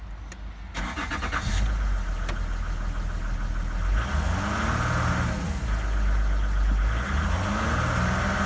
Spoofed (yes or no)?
no